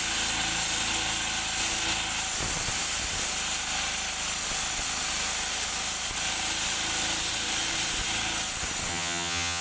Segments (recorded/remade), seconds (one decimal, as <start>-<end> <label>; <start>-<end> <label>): 0.0-8.9 recorded; 8.9-9.6 remade